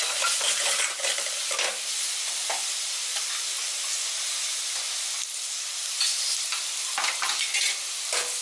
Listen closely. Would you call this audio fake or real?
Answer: real